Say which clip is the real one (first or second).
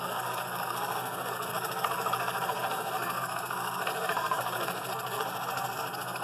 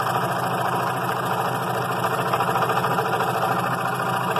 second